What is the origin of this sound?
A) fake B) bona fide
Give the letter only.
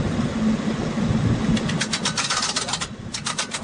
B